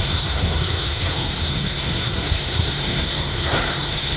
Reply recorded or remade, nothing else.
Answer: remade